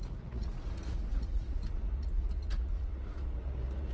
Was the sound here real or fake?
fake